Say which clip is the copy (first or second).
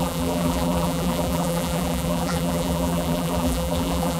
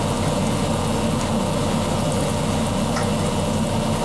first